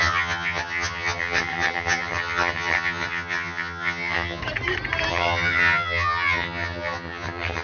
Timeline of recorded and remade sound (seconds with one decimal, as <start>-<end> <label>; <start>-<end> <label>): 0.0-4.4 remade; 4.4-5.1 recorded; 5.1-7.6 remade